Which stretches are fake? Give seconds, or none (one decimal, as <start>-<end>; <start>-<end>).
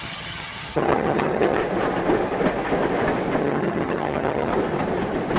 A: 0.0-1.6; 3.4-4.5